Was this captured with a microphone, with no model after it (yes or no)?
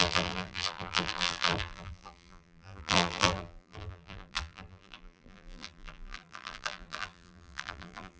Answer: no